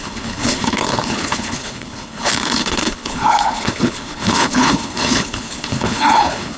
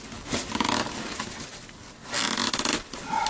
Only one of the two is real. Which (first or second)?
second